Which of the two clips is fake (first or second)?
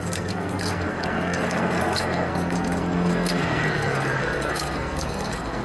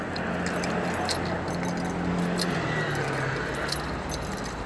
first